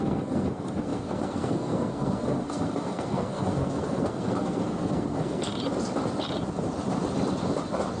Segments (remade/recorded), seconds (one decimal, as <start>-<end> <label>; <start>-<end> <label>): 0.0-5.5 remade; 5.5-8.0 recorded